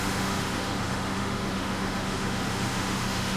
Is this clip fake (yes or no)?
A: yes